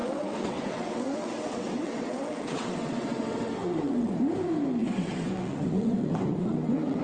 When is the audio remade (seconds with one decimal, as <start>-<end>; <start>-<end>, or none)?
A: 0.0-4.2; 4.8-7.0